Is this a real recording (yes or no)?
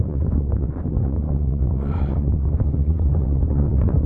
no